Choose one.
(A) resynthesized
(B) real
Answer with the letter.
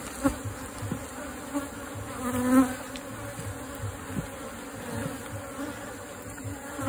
B